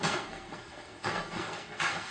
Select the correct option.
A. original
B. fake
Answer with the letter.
B